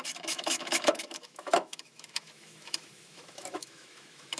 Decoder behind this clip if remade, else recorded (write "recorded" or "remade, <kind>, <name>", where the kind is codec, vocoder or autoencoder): remade, autoencoder, DAC-VAE